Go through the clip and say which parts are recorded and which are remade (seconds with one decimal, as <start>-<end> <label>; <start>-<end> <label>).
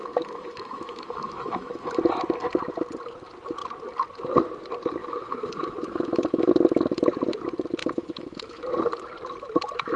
0.0-2.0 remade; 2.0-5.0 recorded; 5.0-6.5 remade; 6.5-7.8 recorded; 7.8-8.6 remade; 8.6-10.0 recorded